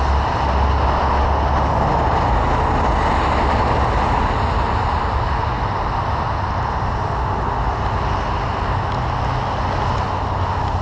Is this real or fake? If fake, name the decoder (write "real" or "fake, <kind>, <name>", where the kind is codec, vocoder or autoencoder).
real